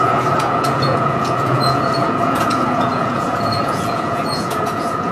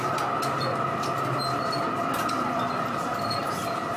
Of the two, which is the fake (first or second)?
first